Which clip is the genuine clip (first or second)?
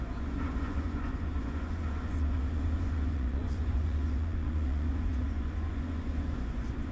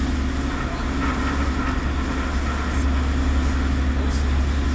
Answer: second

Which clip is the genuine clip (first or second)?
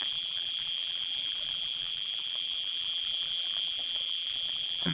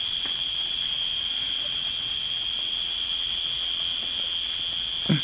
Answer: second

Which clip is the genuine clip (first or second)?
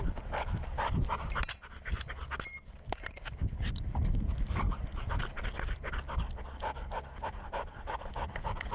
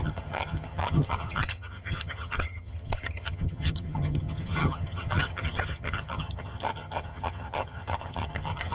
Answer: first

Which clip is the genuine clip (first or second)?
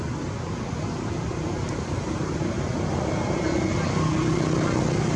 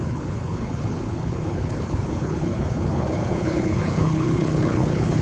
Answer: first